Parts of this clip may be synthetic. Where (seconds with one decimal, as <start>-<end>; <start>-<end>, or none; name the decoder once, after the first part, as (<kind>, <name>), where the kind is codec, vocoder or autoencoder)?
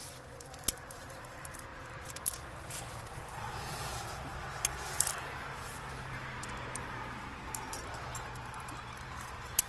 0.0-4.3 (vocoder, BigVGAN v2); 4.9-9.7